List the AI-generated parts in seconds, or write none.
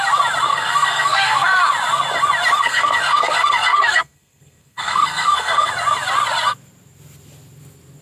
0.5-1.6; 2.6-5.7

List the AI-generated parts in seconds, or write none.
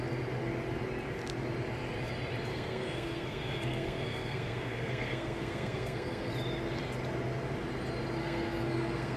2.5-6.3; 8.2-9.2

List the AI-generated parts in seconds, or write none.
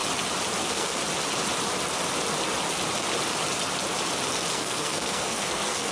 0.6-1.0; 4.5-5.9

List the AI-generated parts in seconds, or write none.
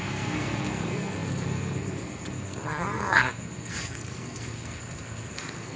0.0-5.8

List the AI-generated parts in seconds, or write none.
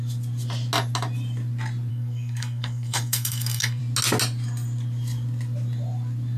1.9-3.8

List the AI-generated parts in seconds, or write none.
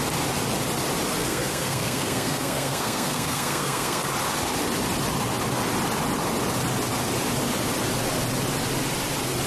1.2-4.0